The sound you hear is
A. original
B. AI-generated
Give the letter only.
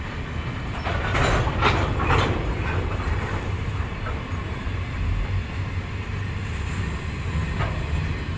A